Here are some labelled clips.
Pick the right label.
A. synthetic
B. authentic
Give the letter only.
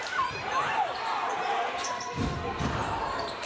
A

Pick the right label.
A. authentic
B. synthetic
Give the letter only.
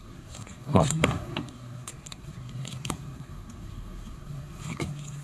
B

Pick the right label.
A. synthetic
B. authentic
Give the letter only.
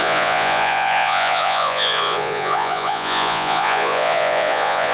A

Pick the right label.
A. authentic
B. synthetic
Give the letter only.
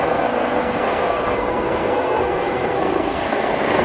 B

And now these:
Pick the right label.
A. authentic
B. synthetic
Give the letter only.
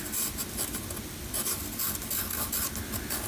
A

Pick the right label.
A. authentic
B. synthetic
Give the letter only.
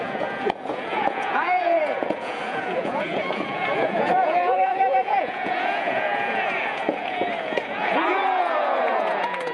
B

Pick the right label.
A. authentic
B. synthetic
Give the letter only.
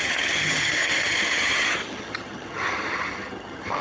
B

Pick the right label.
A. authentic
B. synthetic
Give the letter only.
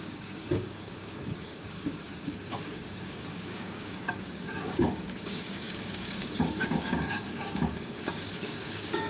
B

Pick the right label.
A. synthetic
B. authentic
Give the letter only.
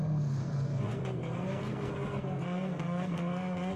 A